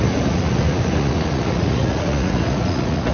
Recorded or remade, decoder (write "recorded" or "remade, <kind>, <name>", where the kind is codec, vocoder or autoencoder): remade, vocoder, Vocos